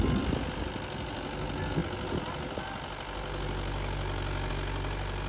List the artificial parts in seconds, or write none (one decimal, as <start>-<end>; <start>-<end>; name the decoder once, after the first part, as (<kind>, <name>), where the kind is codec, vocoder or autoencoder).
none